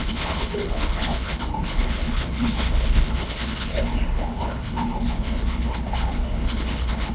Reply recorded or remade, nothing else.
remade